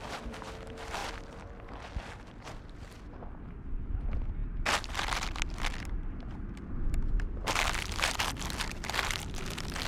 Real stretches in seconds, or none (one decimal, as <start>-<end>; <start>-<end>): 0.0-9.9